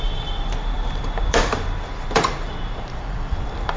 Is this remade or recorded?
remade